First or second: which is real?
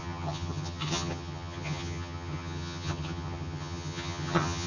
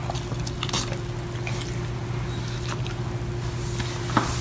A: second